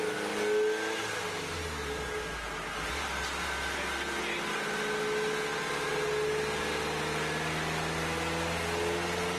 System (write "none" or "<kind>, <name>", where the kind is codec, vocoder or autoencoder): none